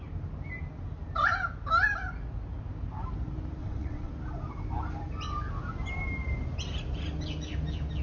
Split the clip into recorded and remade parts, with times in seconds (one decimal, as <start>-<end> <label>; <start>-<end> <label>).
0.0-3.6 recorded; 3.6-4.1 remade; 4.1-8.0 recorded